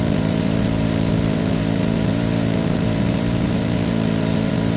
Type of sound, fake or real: fake